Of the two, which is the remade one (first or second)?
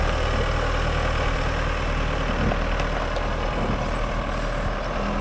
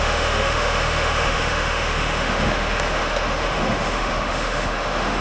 second